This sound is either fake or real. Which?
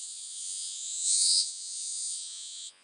fake